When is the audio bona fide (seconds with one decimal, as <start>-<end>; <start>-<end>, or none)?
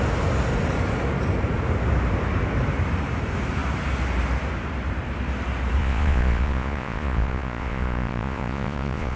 0.0-5.8